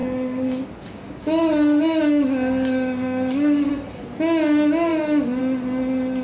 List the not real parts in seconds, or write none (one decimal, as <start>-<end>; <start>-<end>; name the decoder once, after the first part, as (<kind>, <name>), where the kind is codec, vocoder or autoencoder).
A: 0.0-3.7 (codec, DAC)